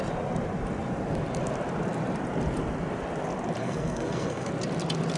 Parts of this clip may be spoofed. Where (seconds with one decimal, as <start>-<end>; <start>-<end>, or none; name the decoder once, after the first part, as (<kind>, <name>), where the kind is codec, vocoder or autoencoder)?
3.6-4.5 (codec, SNAC)